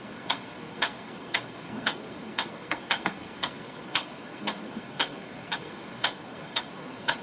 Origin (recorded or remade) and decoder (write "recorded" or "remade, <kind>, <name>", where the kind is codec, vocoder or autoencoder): remade, codec, SNAC